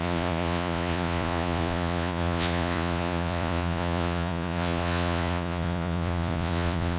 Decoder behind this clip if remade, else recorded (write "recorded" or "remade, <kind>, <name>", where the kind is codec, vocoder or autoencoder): remade, vocoder, Vocos